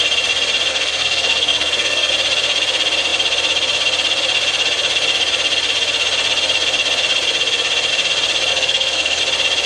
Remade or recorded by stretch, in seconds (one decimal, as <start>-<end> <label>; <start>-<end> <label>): 0.0-0.7 recorded; 0.7-2.1 remade; 2.1-8.5 recorded; 8.5-9.2 remade; 9.2-9.7 recorded